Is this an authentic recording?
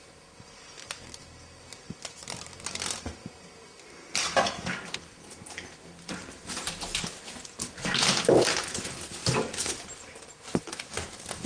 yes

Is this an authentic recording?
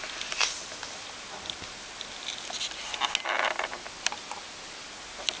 yes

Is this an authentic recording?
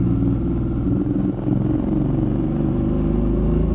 yes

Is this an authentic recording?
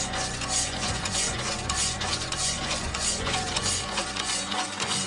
no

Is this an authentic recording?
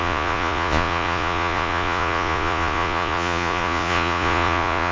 no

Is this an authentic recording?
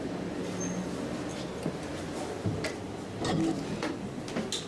yes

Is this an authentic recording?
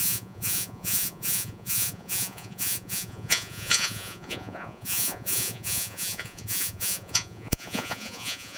no